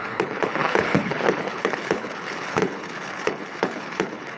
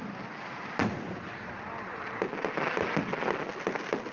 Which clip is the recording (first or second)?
second